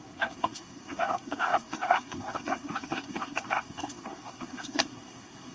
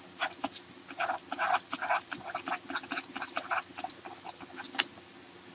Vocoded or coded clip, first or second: first